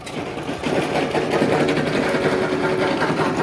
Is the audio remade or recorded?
recorded